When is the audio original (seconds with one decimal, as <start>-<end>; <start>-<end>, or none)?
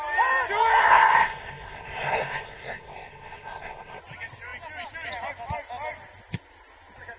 0.0-0.8; 4.0-7.2